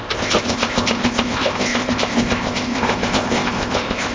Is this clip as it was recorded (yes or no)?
no